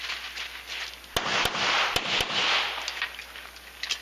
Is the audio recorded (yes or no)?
yes